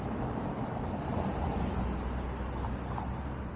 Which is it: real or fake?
real